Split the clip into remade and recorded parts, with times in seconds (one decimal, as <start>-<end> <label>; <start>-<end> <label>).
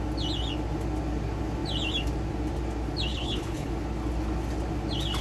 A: 0.0-3.1 recorded; 3.1-3.7 remade; 3.7-5.2 recorded